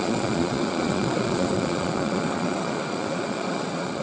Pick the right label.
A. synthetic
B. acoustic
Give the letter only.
A